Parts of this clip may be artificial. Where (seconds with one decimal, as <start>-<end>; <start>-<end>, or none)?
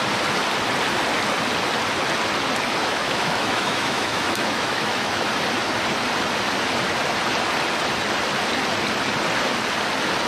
2.8-5.3